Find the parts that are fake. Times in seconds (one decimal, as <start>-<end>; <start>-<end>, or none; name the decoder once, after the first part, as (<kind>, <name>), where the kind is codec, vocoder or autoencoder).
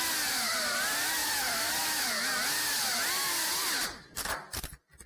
none